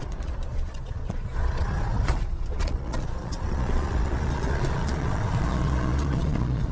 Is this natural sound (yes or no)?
no